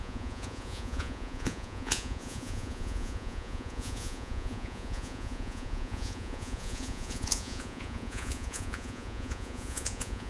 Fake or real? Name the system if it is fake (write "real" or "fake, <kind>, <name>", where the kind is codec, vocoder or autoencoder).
fake, vocoder, Vocos